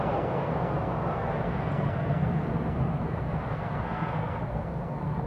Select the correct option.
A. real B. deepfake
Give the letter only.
B